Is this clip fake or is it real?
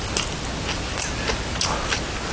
real